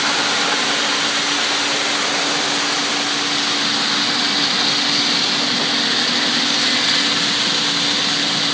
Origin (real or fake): real